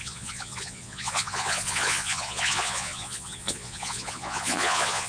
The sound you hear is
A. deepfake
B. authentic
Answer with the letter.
A